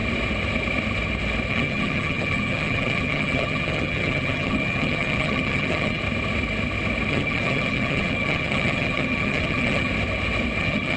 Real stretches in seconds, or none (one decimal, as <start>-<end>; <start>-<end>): 0.0-1.5; 6.0-7.1; 9.9-10.6